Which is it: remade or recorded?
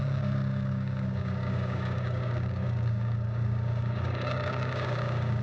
remade